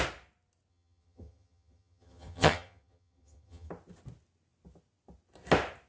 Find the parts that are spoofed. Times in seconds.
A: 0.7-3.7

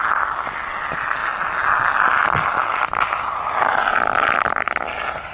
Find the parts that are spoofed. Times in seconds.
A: none

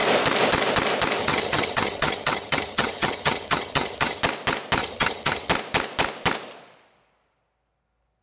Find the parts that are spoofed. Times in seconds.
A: 1.2-4.2; 4.8-5.5